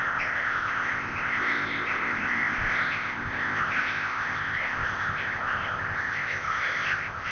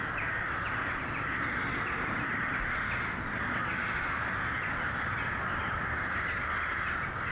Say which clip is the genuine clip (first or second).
second